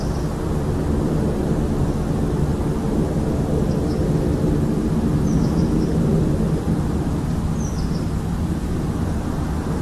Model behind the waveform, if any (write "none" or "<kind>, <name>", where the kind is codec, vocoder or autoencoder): none